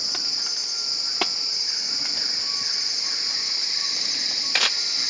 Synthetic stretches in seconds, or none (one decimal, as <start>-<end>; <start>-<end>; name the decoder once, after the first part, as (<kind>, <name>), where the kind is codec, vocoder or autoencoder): none